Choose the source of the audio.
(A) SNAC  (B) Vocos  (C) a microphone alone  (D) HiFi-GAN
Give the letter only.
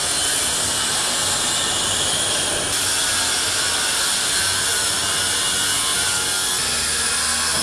C